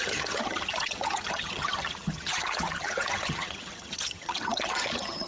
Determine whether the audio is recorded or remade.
remade